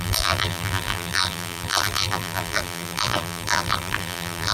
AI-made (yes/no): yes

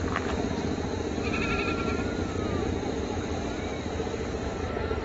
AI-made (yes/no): no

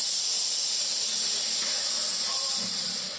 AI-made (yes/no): no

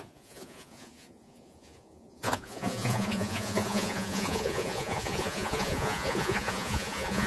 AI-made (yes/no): yes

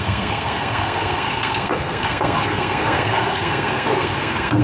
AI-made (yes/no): yes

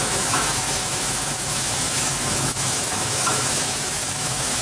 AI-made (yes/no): yes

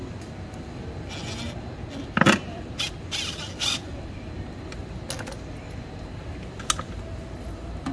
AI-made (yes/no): no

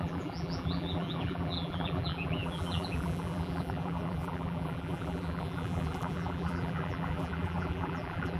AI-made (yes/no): yes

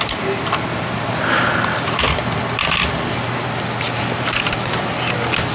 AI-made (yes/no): no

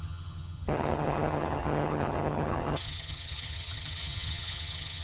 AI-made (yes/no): yes